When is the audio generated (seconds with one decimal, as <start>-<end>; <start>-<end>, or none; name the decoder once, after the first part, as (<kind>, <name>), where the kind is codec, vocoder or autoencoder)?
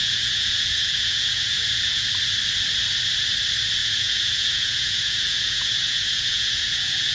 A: 0.0-2.1 (vocoder, Vocos); 3.8-7.1